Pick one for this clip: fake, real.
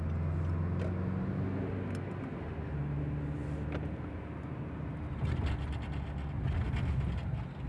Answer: real